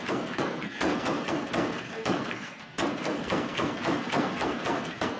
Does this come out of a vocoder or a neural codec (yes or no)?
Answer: yes